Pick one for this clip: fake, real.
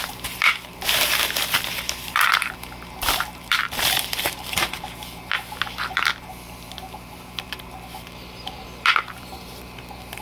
fake